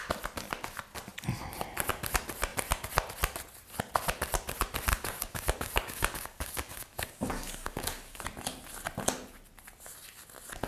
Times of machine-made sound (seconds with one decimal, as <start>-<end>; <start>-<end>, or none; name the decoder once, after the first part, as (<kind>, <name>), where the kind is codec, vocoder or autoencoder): 4.9-8.2 (codec, DAC)